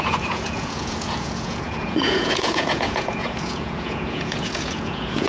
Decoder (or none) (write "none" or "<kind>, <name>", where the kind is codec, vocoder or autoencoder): vocoder, Vocos